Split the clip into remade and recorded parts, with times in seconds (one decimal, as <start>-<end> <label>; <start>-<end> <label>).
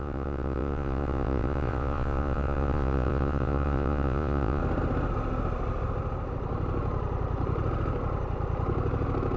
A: 0.0-4.6 remade; 4.6-9.4 recorded